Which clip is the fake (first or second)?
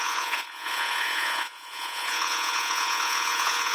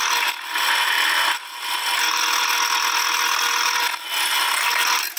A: first